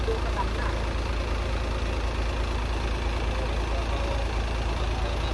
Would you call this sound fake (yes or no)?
no